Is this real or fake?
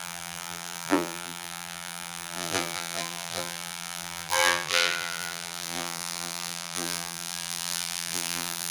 fake